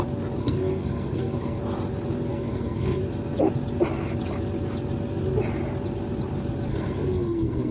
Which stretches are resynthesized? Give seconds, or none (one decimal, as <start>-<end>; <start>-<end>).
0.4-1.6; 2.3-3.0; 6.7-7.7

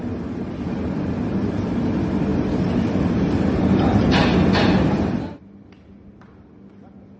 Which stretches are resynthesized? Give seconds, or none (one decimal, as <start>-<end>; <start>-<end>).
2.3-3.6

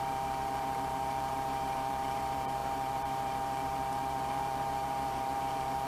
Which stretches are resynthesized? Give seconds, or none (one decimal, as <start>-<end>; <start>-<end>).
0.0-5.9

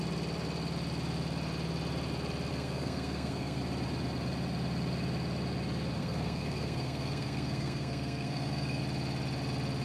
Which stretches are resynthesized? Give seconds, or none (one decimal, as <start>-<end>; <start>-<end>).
2.5-3.6; 6.0-8.8

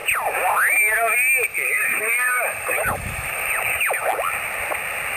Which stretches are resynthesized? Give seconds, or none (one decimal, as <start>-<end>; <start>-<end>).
1.5-4.0